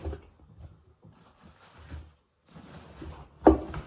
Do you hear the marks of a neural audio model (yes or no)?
no